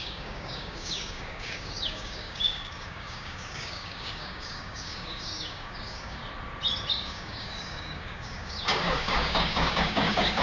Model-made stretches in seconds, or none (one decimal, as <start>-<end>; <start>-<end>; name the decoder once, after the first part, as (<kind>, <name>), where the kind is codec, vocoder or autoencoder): 0.0-6.2 (codec, DAC); 6.9-10.4